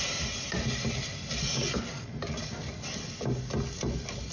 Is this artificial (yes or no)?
no